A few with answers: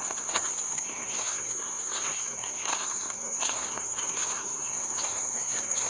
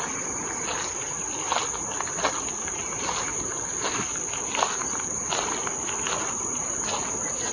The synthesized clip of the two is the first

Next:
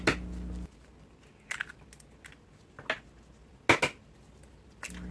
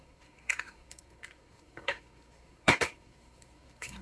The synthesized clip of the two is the second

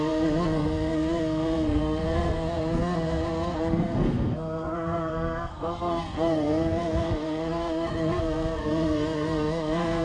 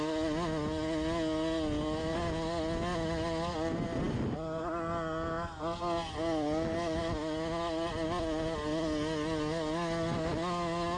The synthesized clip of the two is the first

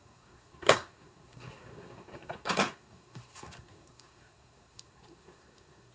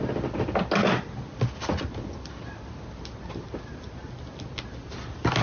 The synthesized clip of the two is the first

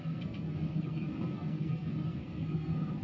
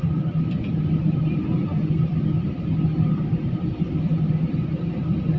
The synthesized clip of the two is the first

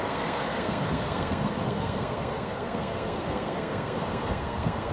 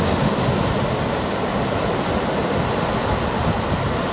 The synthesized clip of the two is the first